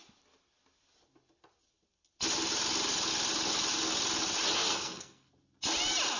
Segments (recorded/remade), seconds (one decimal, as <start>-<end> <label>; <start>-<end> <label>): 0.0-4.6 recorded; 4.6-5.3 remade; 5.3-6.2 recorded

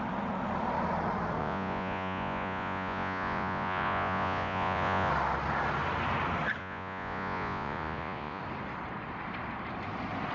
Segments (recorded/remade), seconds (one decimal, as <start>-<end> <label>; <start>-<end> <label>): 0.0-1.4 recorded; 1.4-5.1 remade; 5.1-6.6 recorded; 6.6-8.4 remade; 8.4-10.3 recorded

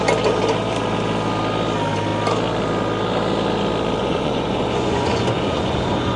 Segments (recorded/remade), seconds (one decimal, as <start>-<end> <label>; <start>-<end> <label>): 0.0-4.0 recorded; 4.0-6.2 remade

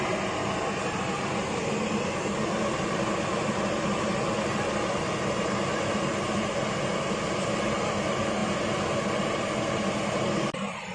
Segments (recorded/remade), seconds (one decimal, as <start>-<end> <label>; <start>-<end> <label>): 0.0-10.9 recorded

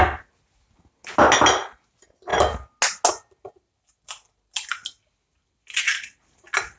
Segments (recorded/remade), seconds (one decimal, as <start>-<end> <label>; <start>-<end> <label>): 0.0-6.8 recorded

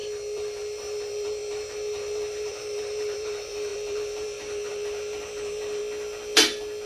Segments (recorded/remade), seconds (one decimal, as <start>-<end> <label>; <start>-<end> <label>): 0.0-5.8 remade; 5.8-6.9 recorded

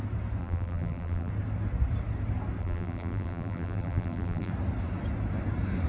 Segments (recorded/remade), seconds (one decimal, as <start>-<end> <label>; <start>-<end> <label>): 0.0-0.4 recorded; 0.4-1.3 remade; 1.3-2.6 recorded; 2.6-4.5 remade; 4.5-5.9 recorded

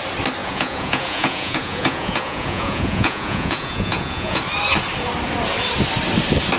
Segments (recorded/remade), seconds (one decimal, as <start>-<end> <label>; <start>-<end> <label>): 0.0-0.4 recorded; 0.4-4.4 remade; 4.4-6.6 recorded